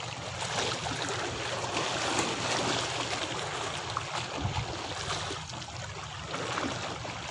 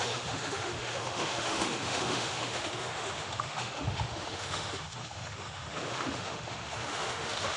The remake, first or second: second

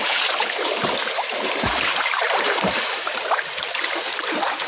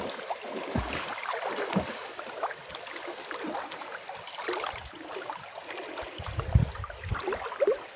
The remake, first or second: first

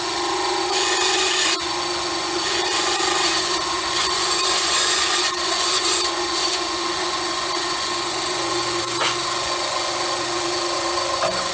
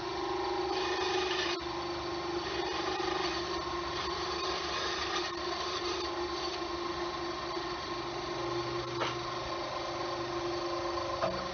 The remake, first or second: first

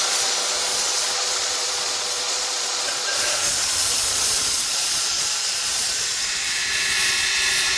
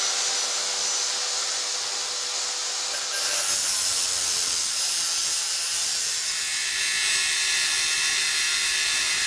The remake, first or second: first